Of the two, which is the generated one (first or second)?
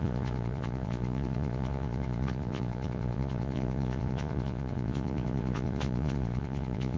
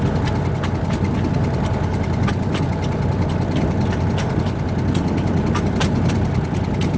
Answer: first